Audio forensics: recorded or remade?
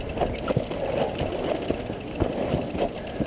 recorded